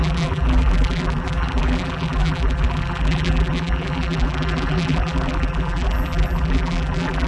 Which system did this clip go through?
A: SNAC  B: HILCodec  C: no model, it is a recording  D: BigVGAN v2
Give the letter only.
D